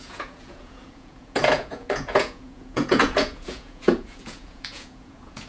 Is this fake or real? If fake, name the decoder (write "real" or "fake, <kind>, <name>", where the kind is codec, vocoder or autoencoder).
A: fake, vocoder, Vocos